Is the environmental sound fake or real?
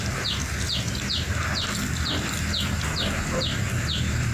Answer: real